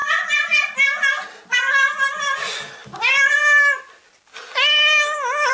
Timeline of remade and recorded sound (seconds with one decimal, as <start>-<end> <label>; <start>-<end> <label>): 0.0-5.5 recorded